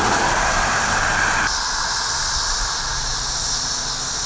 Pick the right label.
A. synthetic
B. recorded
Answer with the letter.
B